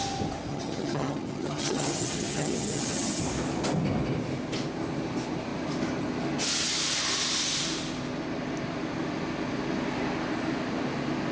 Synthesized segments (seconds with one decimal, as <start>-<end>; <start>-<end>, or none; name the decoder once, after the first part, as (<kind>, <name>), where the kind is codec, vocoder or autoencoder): 0.5-3.2 (vocoder, HiFi-GAN)